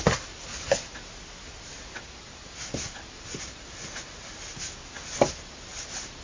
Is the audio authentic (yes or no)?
yes